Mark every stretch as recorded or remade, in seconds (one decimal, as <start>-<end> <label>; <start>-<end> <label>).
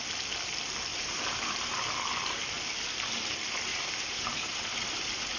0.0-0.9 recorded; 0.9-1.8 remade; 1.8-3.7 recorded; 3.7-5.4 remade